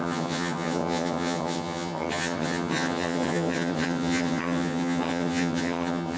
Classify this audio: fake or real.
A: fake